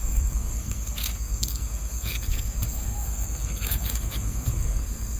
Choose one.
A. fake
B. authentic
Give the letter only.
A